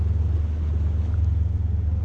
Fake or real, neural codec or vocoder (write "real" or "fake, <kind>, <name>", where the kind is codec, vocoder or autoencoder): real